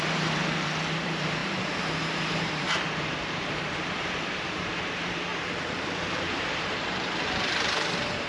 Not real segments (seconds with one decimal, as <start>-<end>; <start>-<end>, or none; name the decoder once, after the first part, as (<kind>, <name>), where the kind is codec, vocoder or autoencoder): 0.0-8.3 (vocoder, BigVGAN v2)